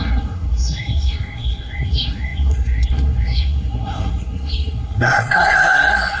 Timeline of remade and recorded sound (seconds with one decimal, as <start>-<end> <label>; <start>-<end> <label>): 0.0-6.2 remade